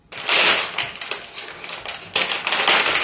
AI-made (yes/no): no